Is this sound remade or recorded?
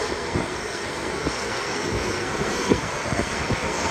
remade